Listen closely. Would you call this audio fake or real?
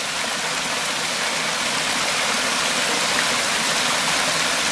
real